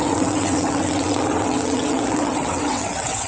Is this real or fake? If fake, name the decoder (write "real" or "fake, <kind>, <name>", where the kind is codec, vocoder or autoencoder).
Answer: fake, vocoder, WaveNeXt